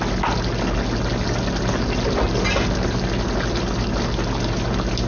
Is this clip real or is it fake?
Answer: real